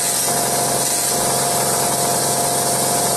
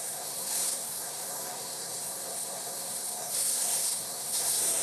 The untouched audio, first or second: first